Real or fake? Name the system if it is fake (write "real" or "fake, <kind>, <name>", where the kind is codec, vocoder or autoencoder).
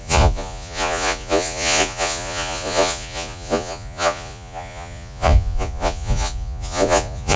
fake, vocoder, Vocos